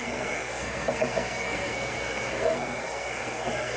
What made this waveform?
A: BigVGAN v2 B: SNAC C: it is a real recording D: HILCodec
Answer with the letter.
B